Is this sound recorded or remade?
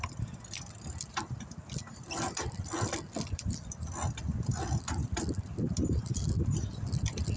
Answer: recorded